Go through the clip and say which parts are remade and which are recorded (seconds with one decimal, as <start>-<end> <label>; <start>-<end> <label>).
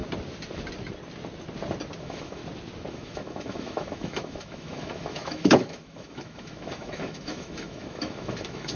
0.0-2.0 recorded; 2.0-2.4 remade; 2.4-2.9 recorded; 2.9-8.8 remade